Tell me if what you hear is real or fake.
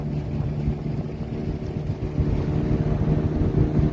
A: real